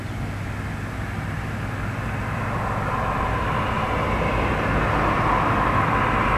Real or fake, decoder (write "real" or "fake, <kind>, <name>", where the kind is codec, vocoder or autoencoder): real